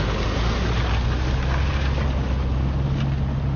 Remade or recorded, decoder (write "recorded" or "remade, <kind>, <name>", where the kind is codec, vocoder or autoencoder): recorded